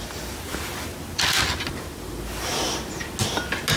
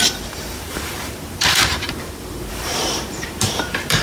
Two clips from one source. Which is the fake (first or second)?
second